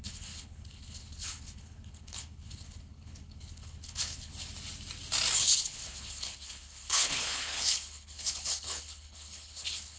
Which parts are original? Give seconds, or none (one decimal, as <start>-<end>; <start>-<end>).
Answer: 4.3-5.4